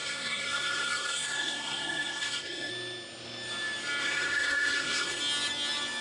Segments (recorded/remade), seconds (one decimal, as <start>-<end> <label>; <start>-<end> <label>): 0.0-2.7 remade; 2.7-4.0 recorded; 4.0-5.2 remade; 5.2-6.0 recorded